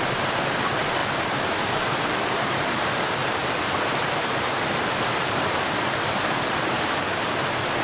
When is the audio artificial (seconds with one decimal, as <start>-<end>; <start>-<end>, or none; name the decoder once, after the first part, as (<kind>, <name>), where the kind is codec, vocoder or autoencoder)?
none